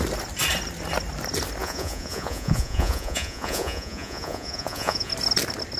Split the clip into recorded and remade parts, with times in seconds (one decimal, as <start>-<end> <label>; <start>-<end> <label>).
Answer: 0.0-1.6 recorded; 1.6-5.1 remade; 5.1-5.8 recorded